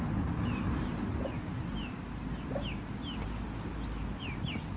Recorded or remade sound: recorded